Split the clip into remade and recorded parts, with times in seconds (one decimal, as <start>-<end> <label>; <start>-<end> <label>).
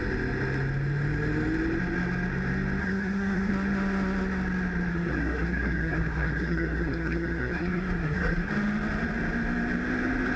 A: 0.0-2.8 recorded; 2.8-3.5 remade; 3.5-4.9 recorded; 4.9-8.5 remade; 8.5-10.4 recorded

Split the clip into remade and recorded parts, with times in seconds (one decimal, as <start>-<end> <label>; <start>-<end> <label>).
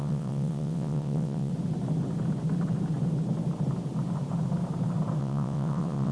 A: 0.0-1.5 remade; 1.5-5.2 recorded; 5.2-6.1 remade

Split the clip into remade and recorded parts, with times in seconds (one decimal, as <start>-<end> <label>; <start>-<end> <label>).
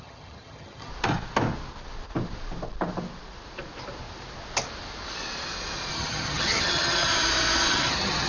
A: 0.0-0.9 remade; 0.9-5.9 recorded; 5.9-7.1 remade; 7.1-7.7 recorded; 7.7-8.3 remade